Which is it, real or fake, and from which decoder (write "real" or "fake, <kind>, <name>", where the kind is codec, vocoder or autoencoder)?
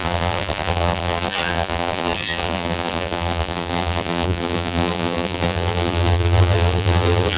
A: fake, vocoder, BigVGAN v2